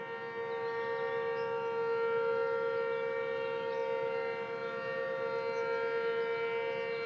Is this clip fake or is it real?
real